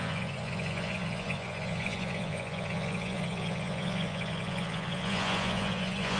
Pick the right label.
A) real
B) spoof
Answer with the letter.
B